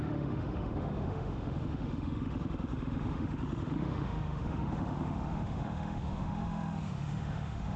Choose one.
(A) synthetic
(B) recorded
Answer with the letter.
A